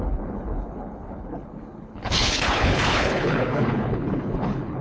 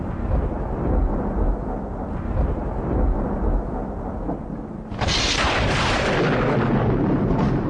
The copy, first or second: first